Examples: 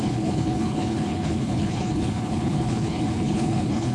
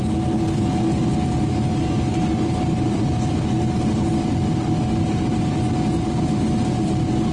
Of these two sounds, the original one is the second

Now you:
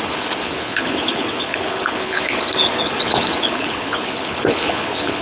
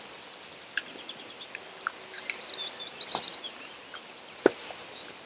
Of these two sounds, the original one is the second